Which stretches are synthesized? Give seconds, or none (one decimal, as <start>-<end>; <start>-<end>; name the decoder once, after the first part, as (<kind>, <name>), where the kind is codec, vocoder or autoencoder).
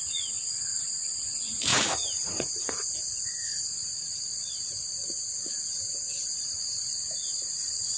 0.0-8.0 (vocoder, Vocos)